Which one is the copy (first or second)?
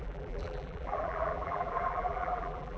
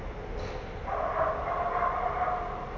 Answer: first